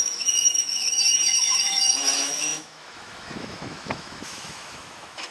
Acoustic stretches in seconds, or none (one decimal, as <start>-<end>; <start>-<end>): none